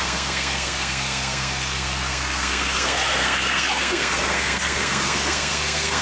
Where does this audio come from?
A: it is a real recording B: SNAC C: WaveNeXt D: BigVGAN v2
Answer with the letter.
B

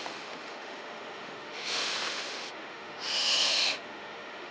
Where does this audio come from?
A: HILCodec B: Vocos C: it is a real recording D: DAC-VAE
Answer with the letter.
D